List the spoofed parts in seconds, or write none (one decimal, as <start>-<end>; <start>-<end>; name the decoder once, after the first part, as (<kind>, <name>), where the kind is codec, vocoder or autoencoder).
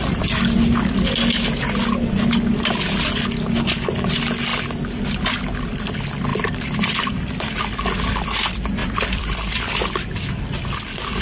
6.3-7.4 (vocoder, BigVGAN v2); 8.8-10.6